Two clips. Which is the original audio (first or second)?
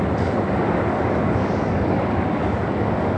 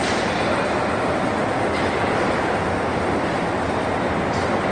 second